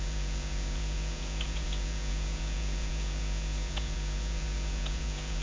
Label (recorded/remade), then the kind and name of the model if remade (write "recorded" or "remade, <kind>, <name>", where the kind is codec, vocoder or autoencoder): remade, vocoder, Vocos